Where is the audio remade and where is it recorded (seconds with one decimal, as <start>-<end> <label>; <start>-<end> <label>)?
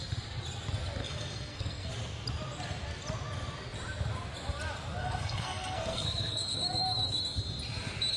0.0-1.0 recorded; 1.0-1.9 remade; 1.9-5.0 recorded; 5.0-7.4 remade; 7.4-8.2 recorded